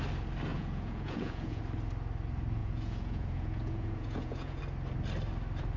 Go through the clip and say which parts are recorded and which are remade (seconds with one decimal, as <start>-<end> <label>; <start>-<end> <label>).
0.0-0.5 recorded; 0.5-1.6 remade; 1.6-2.6 recorded; 2.6-4.6 remade; 4.6-5.8 recorded